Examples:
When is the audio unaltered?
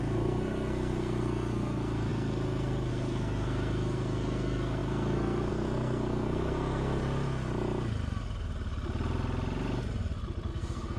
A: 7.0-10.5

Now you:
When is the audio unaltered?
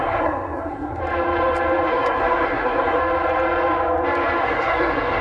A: 1.0-1.9; 3.0-4.4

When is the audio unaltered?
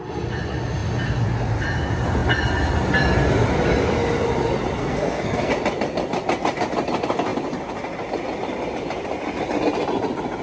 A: 0.0-4.8; 5.5-10.4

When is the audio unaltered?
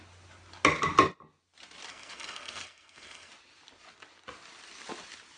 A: 0.0-1.9; 3.3-5.4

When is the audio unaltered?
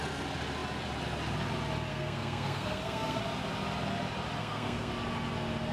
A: 0.0-1.9; 3.2-4.4; 4.9-5.7